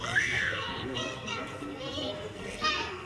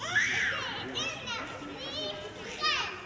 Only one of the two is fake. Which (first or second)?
first